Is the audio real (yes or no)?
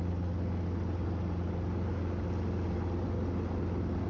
yes